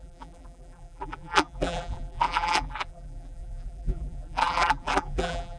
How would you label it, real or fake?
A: fake